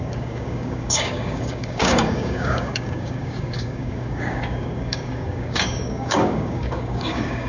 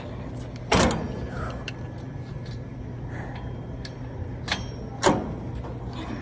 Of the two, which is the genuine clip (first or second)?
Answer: second